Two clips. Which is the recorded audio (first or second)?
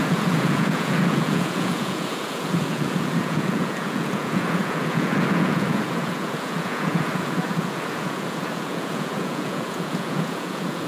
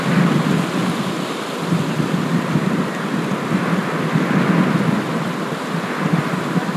second